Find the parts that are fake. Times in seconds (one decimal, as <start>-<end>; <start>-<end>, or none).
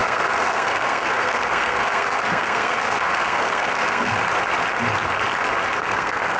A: 0.0-4.2; 5.8-6.4